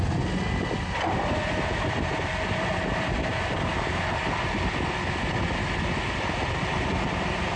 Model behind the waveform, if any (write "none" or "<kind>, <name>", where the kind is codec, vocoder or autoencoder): none